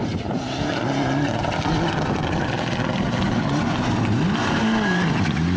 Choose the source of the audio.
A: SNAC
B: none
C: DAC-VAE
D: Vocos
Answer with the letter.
B